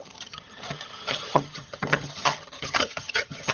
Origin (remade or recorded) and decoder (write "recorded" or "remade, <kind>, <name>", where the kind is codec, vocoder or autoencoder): remade, vocoder, HiFi-GAN